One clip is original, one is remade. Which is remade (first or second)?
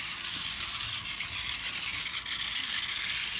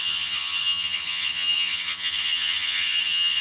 second